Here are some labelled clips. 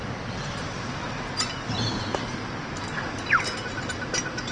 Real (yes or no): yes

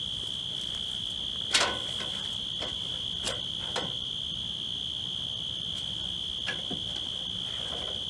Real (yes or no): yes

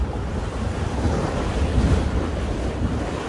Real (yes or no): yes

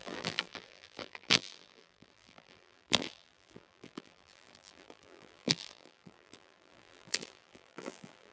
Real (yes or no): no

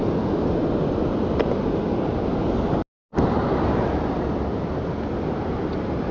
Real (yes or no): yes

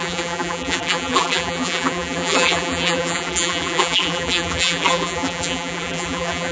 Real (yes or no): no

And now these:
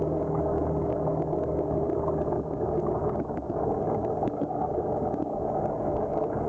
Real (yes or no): no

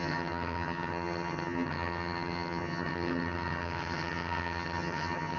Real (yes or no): no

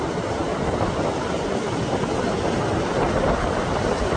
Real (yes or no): yes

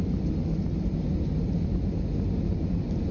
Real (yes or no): yes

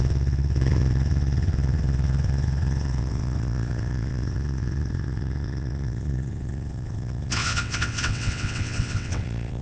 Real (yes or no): no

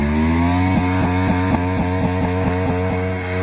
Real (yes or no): yes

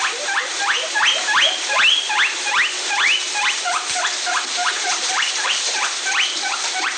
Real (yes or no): yes